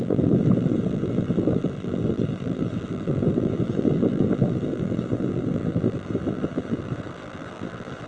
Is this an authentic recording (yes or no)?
no